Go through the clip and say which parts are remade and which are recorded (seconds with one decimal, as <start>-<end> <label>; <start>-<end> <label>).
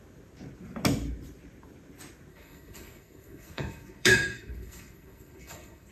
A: 0.0-2.3 recorded; 2.3-5.9 remade